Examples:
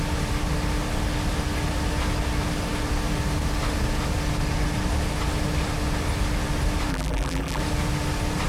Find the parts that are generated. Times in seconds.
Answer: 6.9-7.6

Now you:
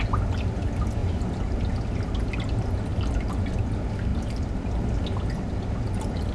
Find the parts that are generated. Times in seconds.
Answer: 1.0-1.6; 4.1-4.7

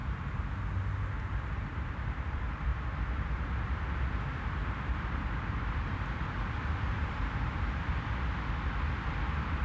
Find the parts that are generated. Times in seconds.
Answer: 1.2-2.7; 4.1-9.6

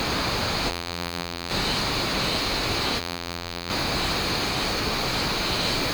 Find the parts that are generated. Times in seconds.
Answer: 0.7-1.5; 3.0-3.7

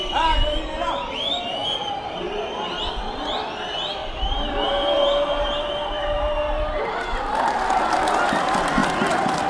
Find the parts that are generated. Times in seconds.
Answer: 1.6-2.4; 4.0-7.3

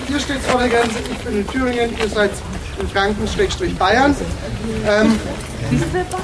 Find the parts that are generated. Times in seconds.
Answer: none

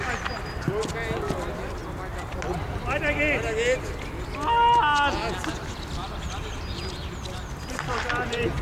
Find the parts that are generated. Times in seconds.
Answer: 1.8-3.2; 5.4-8.6

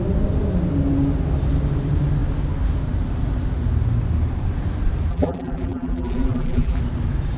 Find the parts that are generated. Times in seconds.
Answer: 5.1-6.8